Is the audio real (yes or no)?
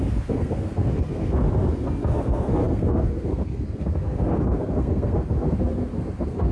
no